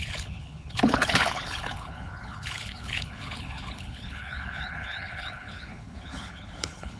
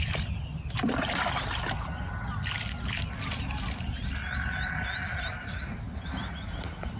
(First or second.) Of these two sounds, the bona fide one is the second